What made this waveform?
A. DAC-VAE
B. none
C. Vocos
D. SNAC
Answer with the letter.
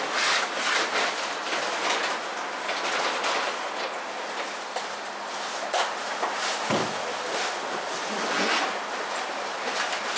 B